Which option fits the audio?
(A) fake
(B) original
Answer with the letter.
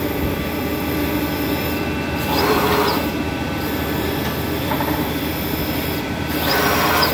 A